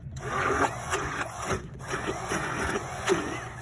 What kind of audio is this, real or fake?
fake